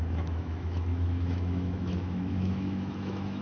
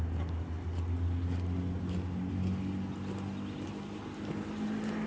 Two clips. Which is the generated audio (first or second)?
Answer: first